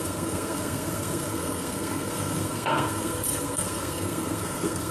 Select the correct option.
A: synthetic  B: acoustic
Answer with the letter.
A